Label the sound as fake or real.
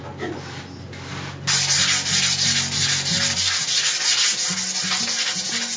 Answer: real